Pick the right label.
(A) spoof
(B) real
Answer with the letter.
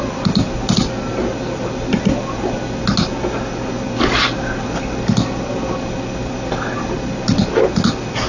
B